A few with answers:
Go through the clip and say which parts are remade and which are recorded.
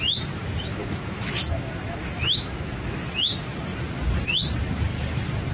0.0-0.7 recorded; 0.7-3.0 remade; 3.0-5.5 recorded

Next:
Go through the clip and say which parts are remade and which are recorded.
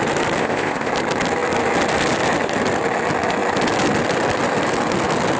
0.0-0.4 recorded; 0.4-0.9 remade; 0.9-5.4 recorded